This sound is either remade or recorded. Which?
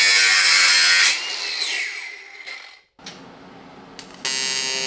recorded